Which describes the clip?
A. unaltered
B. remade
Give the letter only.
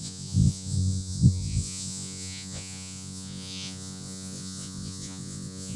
B